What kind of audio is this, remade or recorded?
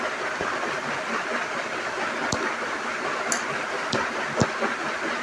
recorded